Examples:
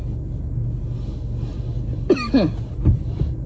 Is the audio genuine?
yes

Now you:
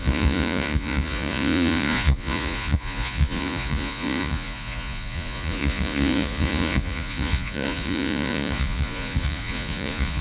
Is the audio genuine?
no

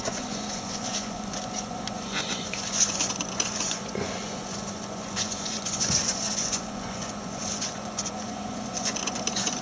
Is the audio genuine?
no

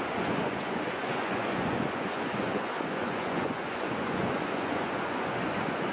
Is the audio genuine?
no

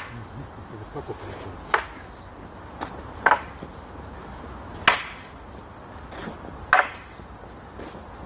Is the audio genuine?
yes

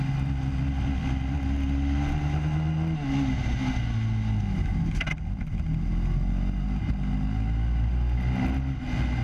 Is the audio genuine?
yes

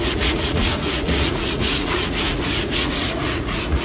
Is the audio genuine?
no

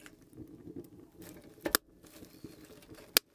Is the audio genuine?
yes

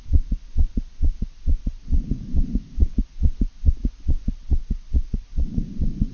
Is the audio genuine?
yes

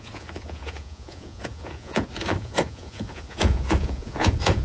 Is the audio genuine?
no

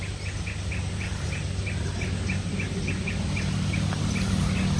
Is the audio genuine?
yes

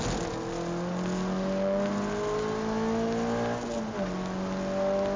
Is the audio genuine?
yes